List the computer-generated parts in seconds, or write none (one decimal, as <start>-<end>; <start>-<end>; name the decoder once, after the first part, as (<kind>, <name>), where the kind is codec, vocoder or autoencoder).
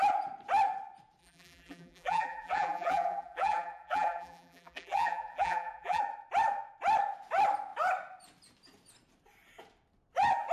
1.2-6.0 (vocoder, BigVGAN v2)